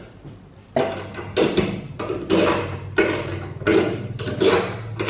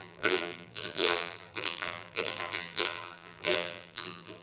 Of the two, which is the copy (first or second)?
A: second